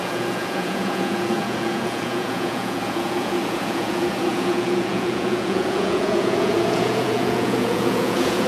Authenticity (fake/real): fake